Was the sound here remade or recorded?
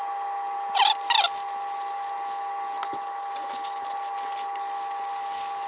recorded